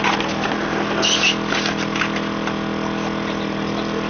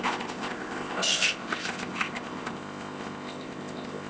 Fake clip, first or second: second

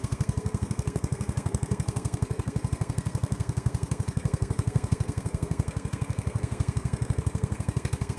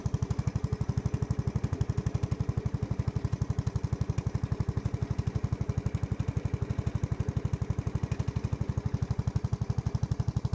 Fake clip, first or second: first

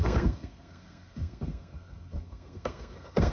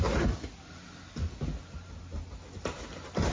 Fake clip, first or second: first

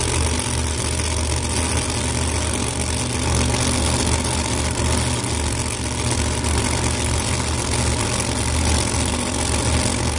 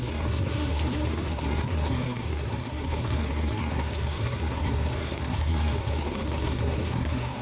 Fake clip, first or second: second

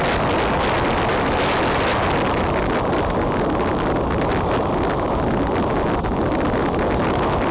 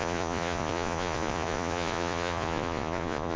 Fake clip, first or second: second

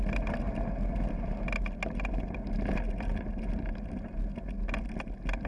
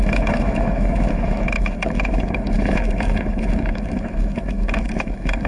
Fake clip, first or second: second